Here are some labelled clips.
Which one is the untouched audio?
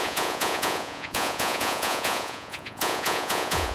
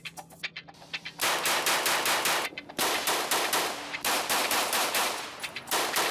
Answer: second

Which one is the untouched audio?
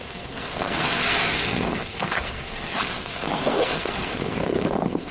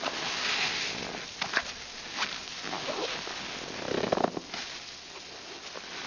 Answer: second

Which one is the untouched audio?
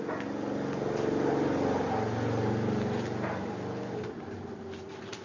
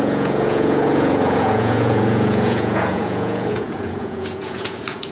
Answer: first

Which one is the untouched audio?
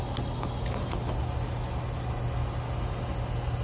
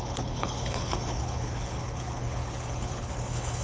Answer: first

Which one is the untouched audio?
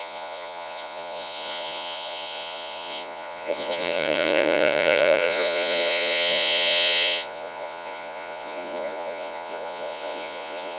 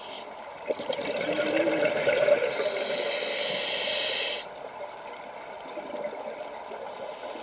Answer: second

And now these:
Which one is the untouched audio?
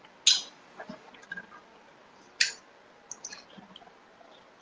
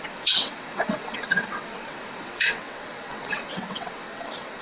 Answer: first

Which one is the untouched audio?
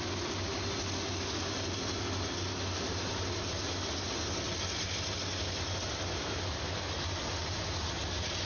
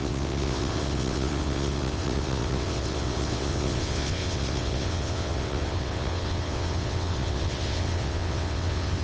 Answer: first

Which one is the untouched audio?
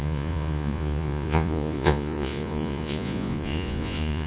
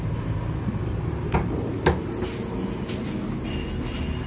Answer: second